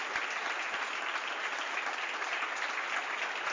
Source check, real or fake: real